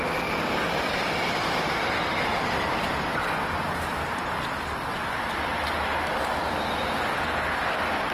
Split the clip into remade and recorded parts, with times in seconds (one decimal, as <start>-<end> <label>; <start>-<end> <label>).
0.0-2.3 recorded; 2.3-7.2 remade; 7.2-8.1 recorded